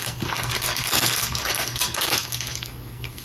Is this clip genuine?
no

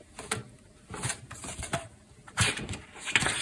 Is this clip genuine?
no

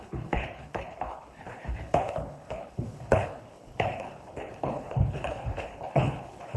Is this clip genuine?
no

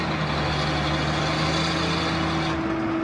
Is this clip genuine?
yes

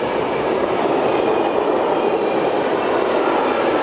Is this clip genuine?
yes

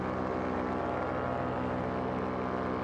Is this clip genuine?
yes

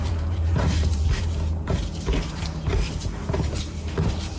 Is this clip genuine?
no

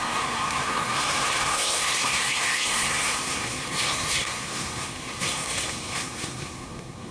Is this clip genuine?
no